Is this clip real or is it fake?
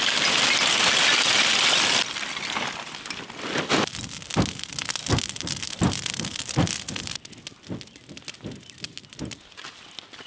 real